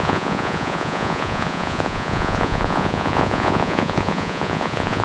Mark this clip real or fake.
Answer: fake